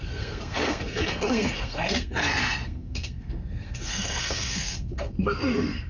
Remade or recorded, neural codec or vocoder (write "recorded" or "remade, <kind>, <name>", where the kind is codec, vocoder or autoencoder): remade, codec, SNAC